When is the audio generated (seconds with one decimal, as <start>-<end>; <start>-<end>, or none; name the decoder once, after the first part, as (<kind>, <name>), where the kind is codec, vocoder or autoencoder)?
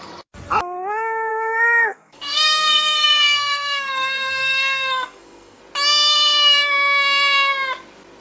1.3-5.6 (codec, SNAC)